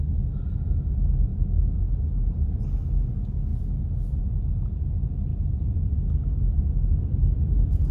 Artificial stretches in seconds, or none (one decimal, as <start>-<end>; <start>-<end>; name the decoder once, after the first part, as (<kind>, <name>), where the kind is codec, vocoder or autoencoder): none